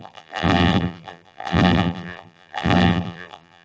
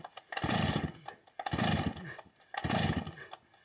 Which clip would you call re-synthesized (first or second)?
first